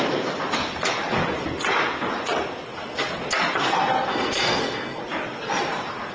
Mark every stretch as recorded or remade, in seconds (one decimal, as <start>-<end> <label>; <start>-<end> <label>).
0.0-4.1 recorded; 4.1-5.0 remade; 5.0-6.1 recorded